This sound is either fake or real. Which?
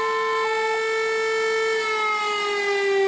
real